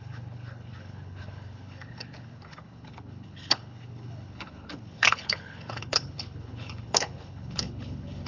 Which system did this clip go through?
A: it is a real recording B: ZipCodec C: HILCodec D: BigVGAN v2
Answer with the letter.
C